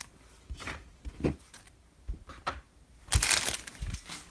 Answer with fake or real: real